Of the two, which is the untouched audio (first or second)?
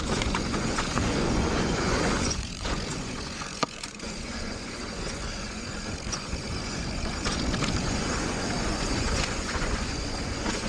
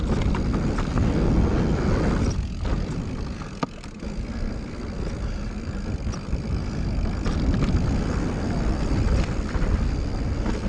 second